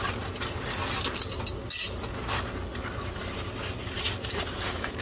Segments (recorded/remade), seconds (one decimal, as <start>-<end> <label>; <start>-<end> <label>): 0.0-0.8 remade; 0.8-3.8 recorded; 3.8-5.0 remade